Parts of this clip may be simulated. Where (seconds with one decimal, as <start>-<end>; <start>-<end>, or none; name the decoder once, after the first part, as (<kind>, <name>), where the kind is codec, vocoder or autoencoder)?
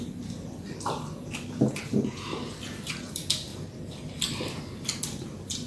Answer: 0.0-3.5 (vocoder, BigVGAN v2); 5.0-5.7